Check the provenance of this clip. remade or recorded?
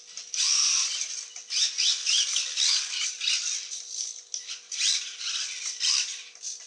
recorded